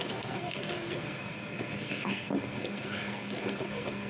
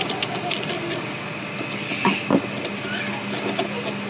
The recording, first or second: second